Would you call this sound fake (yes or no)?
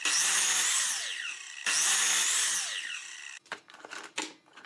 no